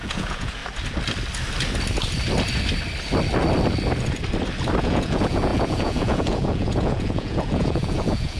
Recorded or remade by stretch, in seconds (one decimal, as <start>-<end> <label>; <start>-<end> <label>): 0.0-0.6 remade; 0.6-4.8 recorded; 4.8-8.4 remade